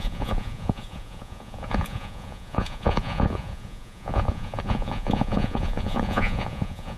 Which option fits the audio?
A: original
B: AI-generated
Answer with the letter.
B